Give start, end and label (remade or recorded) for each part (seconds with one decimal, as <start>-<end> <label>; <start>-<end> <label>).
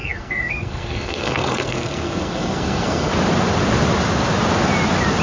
0.0-3.1 remade; 3.1-5.2 recorded